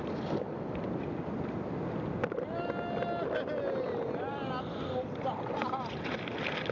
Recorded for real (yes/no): yes